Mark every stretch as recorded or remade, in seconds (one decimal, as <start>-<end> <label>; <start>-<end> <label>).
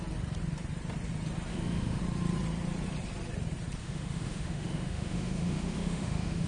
0.0-1.5 recorded; 1.5-2.0 remade; 2.0-3.8 recorded; 3.8-6.5 remade